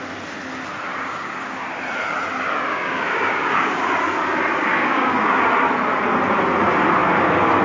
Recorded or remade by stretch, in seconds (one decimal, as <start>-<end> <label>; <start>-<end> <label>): 0.0-0.9 recorded; 0.9-1.8 remade; 1.8-2.7 recorded; 2.7-3.8 remade; 3.8-4.6 recorded; 4.6-5.4 remade; 5.4-7.6 recorded